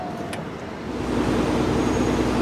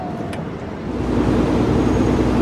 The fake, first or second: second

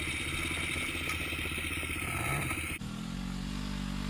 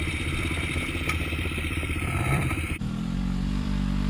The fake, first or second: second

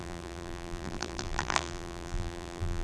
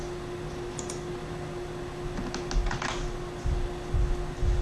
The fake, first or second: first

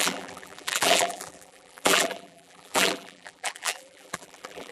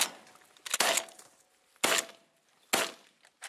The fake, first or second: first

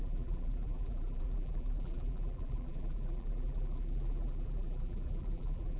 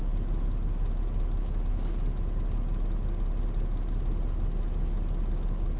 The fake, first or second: first